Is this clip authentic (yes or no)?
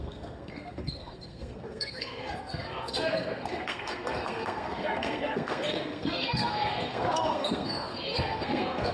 no